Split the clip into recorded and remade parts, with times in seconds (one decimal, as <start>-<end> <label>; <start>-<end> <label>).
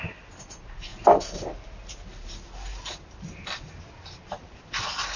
0.0-0.9 recorded; 0.9-2.3 remade; 2.3-5.2 recorded